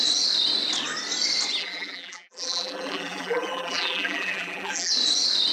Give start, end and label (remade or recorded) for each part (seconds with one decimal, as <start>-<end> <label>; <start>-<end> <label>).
0.0-1.6 recorded; 1.6-4.9 remade; 4.9-5.5 recorded